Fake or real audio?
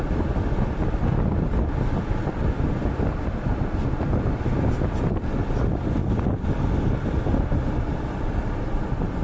real